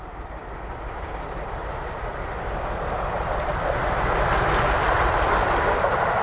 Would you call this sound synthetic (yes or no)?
yes